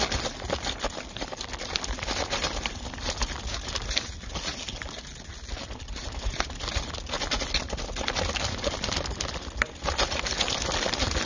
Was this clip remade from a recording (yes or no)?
no